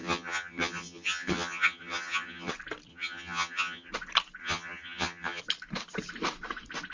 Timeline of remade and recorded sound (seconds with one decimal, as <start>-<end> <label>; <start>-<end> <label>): 0.0-2.5 remade; 2.5-2.9 recorded; 2.9-3.9 remade; 3.9-4.4 recorded; 4.4-5.4 remade; 5.4-6.9 recorded